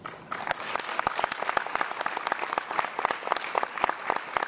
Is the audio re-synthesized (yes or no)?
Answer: no